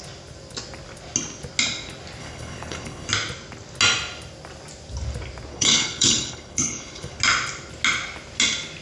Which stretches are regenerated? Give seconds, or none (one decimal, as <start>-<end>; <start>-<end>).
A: 2.2-3.1; 5.5-7.2